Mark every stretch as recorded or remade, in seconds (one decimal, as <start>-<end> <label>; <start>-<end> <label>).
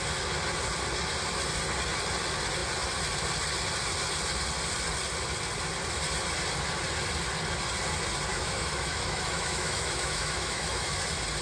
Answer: 0.0-8.3 recorded; 8.3-11.0 remade; 11.0-11.4 recorded